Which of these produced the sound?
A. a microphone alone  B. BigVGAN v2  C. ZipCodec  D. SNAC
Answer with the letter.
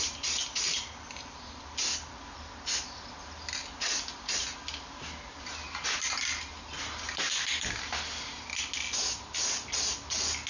A